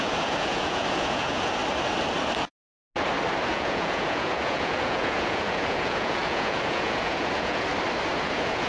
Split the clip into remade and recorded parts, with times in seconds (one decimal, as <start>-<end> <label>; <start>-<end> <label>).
0.0-1.6 remade; 1.6-3.5 recorded; 3.5-7.7 remade; 7.7-8.2 recorded; 8.2-8.7 remade